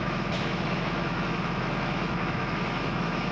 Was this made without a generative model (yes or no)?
no